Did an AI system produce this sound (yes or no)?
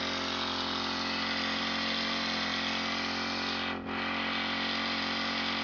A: no